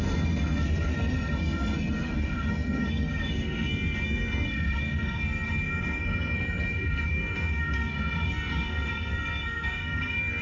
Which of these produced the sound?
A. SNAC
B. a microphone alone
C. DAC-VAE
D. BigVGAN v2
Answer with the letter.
A